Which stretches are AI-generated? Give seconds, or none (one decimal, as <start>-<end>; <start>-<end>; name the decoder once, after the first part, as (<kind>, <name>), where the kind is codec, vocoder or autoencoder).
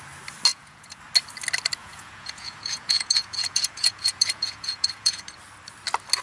0.5-1.0 (vocoder, Vocos); 1.8-5.2